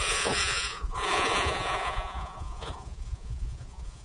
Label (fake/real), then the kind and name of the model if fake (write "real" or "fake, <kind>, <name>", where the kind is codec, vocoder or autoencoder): fake, vocoder, Vocos